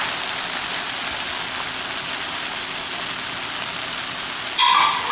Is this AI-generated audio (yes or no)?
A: no